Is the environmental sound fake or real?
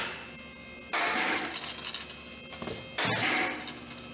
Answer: real